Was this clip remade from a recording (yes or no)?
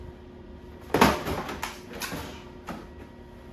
no